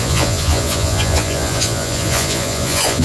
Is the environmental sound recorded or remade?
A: remade